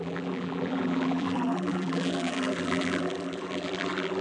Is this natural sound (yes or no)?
no